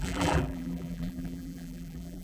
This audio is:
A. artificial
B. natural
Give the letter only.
A